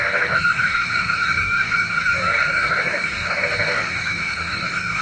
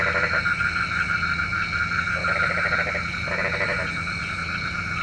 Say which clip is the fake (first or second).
first